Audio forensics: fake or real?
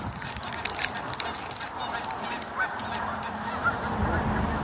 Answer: real